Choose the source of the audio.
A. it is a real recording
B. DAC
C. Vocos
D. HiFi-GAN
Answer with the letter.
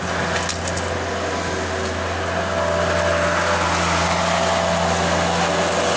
A